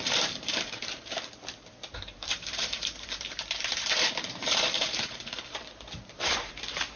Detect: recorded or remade remade